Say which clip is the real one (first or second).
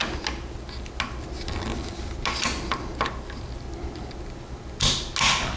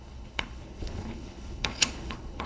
first